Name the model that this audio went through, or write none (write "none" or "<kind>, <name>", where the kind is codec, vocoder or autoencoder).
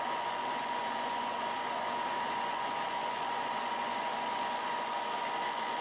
vocoder, Vocos